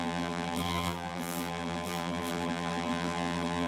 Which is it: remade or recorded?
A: remade